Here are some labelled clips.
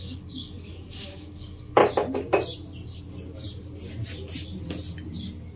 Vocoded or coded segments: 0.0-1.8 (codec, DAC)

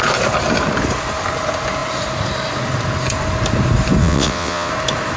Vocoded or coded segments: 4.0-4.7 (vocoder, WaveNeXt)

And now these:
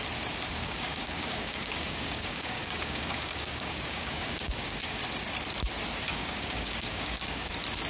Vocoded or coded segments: 0.5-5.0 (codec, DAC); 6.1-7.5

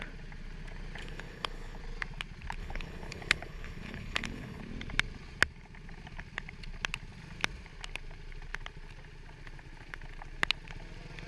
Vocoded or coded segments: 1.0-1.8 (codec, HILCodec); 2.6-4.6

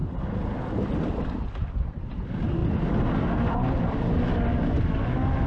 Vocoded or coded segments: none

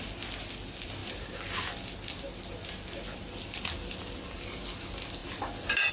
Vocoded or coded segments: none

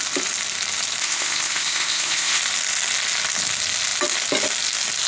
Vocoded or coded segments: 1.0-2.4 (codec, ZipCodec)